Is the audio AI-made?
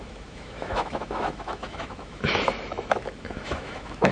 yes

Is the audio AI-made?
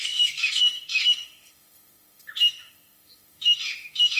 yes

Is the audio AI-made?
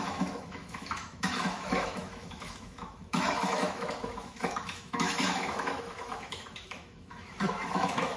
yes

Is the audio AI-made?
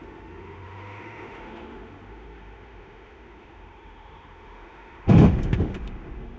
yes